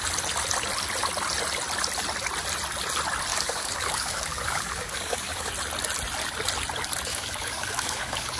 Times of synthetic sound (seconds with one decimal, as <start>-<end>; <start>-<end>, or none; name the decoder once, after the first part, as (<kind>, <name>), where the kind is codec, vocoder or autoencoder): 3.3-5.5 (codec, DAC); 7.1-8.4

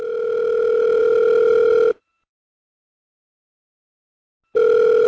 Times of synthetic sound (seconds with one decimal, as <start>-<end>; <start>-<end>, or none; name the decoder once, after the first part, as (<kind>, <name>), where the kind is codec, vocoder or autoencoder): none

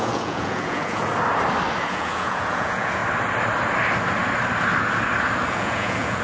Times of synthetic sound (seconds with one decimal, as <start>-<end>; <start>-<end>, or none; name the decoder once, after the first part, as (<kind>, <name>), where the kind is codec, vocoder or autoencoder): 0.0-1.1 (vocoder, Vocos); 1.9-3.0; 5.5-6.2

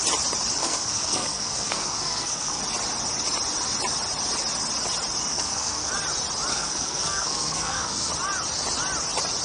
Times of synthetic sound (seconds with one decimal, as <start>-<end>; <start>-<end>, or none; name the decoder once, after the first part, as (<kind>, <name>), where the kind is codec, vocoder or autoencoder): 0.6-2.6 (codec, SNAC); 5.3-5.9; 6.5-8.1